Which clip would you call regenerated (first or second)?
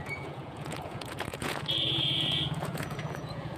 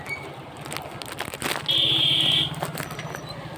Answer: first